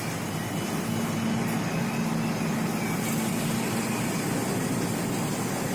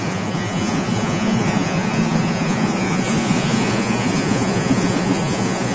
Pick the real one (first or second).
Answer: first